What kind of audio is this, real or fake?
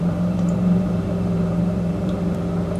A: fake